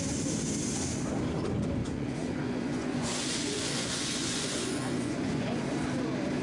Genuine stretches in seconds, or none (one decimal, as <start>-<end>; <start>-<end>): 0.0-1.8; 5.6-6.4